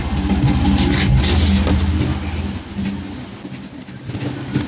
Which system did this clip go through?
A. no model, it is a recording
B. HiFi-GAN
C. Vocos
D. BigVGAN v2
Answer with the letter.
A